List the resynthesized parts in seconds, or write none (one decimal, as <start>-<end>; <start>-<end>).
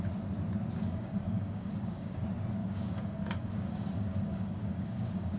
0.8-2.2; 2.6-5.4